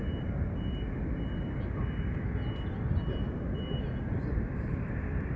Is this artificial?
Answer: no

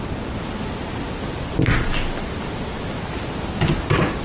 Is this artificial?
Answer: no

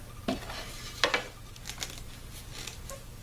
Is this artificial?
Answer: no